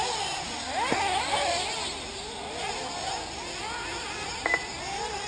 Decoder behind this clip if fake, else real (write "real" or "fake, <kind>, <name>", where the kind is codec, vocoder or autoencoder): real